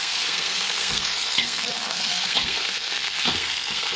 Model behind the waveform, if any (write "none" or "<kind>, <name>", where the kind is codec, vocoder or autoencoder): codec, SNAC